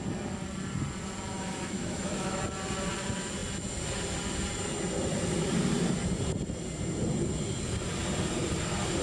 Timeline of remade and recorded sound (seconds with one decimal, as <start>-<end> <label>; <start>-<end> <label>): 0.0-1.3 recorded; 1.3-2.4 remade; 2.4-9.0 recorded